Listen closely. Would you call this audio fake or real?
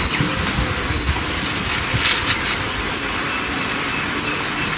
real